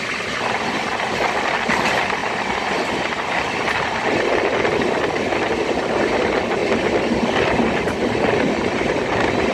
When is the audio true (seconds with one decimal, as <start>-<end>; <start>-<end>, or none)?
0.0-9.5